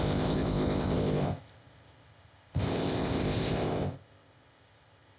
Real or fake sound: fake